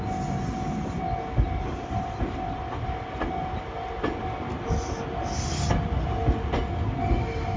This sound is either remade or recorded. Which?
recorded